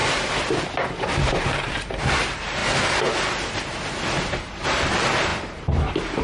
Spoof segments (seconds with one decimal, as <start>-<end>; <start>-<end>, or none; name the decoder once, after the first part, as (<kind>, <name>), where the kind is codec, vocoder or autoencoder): 1.0-2.6 (vocoder, BigVGAN v2); 4.4-6.2